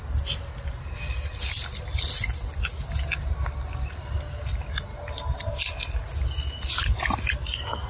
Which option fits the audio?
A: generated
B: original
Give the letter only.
B